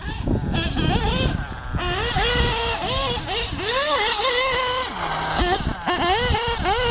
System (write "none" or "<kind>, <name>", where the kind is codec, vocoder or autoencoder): none